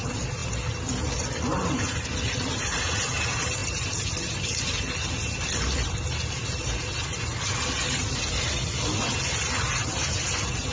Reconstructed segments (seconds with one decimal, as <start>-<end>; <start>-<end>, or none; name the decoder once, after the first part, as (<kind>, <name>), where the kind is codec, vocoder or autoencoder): none